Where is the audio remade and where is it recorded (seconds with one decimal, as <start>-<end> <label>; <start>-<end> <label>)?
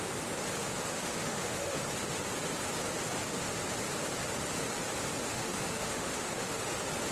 0.0-0.9 recorded; 0.9-1.8 remade; 1.8-5.2 recorded; 5.2-6.6 remade; 6.6-7.1 recorded